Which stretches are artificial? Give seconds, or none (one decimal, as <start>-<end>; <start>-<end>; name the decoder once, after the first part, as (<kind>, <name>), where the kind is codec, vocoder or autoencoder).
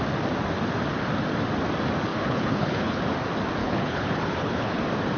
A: 2.1-3.0 (codec, HILCodec); 3.6-4.8